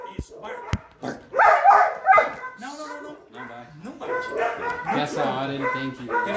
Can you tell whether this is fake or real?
real